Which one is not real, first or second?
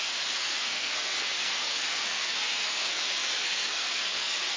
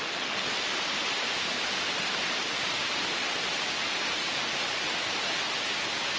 first